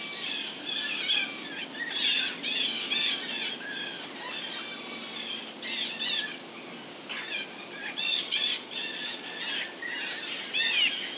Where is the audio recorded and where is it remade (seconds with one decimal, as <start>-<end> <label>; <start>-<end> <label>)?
0.0-7.8 recorded; 7.8-9.4 remade; 9.4-11.2 recorded